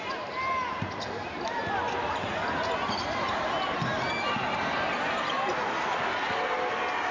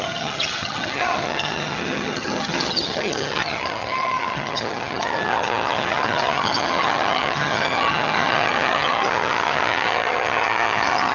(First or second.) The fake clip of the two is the second